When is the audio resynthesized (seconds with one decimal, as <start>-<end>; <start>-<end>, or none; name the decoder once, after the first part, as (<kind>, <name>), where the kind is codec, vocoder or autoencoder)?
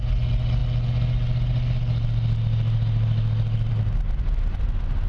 none